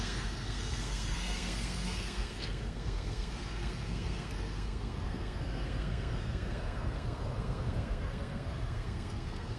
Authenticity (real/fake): fake